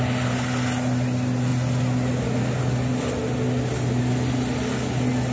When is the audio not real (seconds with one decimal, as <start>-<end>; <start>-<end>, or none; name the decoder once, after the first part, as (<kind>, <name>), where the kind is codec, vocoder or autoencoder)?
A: none